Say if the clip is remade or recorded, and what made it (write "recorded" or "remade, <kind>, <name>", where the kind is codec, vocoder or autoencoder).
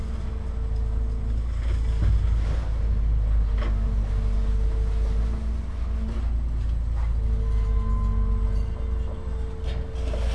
recorded